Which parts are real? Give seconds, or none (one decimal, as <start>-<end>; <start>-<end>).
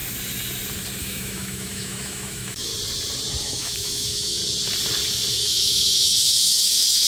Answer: 0.0-1.0; 2.7-3.4; 4.4-5.3